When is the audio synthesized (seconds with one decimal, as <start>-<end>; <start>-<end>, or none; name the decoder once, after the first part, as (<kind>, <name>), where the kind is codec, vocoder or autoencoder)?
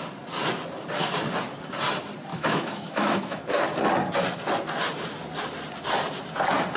2.3-3.4 (autoencoder, DAC-VAE)